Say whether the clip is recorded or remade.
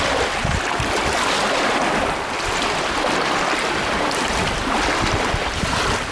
recorded